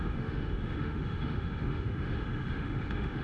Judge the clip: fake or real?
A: fake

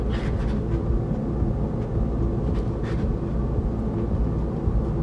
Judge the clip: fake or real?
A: real